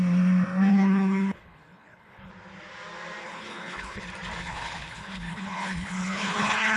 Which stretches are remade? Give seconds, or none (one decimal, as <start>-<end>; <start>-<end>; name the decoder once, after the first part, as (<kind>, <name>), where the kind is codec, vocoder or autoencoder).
0.7-2.3 (codec, HILCodec); 3.2-4.0; 4.4-6.8

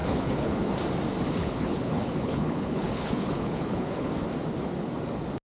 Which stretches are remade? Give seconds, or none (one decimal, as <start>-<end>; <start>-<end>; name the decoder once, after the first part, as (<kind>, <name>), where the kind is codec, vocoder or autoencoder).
0.0-0.6 (codec, HILCodec); 1.4-4.1

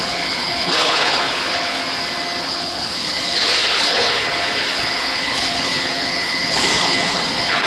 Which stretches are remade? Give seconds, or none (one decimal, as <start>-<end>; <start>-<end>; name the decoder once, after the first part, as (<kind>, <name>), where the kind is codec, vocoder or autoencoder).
0.0-1.8 (codec, HILCodec); 2.4-7.7

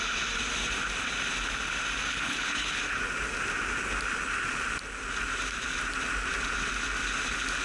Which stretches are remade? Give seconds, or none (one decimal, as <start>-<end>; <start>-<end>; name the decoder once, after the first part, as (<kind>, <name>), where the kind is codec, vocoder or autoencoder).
2.1-2.8 (codec, HILCodec)

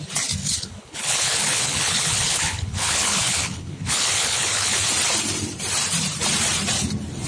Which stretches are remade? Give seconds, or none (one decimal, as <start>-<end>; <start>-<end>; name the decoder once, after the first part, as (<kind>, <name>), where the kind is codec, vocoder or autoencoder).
0.4-4.8 (codec, HILCodec)

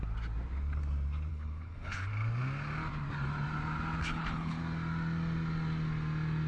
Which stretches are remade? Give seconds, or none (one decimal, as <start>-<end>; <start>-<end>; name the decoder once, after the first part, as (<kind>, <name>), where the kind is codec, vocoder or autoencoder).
1.3-2.1 (codec, HILCodec); 4.1-4.6